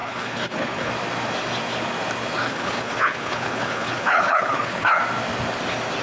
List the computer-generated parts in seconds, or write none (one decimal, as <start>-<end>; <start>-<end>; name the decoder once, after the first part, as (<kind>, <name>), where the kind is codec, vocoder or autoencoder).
0.0-0.9 (codec, HILCodec); 2.4-5.0